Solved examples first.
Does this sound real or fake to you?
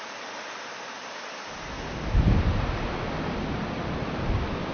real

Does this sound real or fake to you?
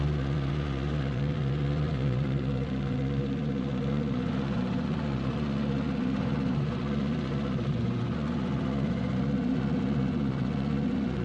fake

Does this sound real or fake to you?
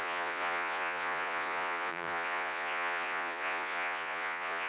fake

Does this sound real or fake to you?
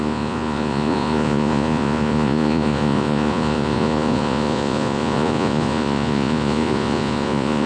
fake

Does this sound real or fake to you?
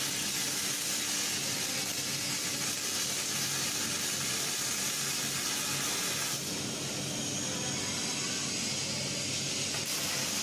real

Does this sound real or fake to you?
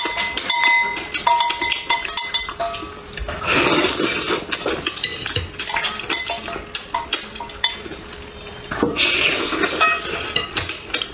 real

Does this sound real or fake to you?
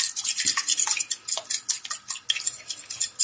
real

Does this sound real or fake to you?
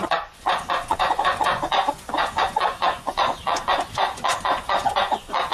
fake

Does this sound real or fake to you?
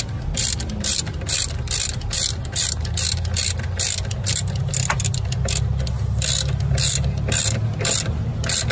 real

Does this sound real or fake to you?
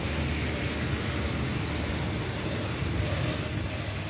real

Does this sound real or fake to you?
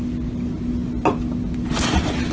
real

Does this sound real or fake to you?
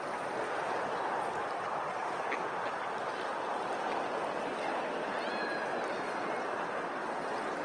real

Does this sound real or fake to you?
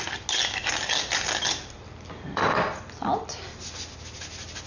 real